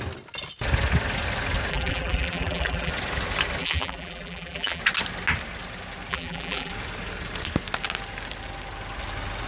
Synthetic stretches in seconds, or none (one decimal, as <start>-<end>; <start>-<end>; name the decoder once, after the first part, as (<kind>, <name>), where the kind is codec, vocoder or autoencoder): 1.7-2.9 (vocoder, BigVGAN v2); 3.6-4.8; 6.1-6.7